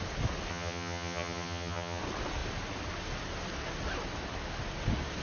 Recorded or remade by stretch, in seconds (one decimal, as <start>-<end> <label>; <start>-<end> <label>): 0.0-0.5 recorded; 0.5-2.0 remade; 2.0-5.2 recorded